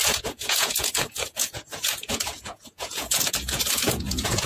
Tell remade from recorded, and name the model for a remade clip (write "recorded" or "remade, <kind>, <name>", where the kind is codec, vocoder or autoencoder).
remade, vocoder, Vocos